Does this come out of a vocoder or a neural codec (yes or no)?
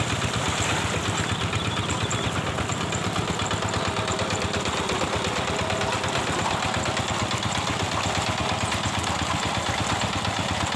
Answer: no